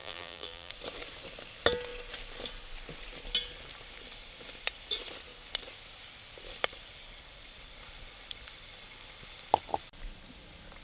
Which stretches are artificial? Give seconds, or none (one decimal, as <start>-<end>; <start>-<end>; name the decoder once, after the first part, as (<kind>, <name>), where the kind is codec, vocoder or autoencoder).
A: 0.0-0.7 (vocoder, BigVGAN v2)